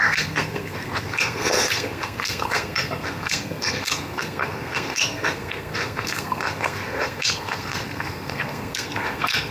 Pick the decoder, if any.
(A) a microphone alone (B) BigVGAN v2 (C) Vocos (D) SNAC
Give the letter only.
D